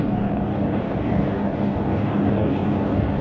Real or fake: fake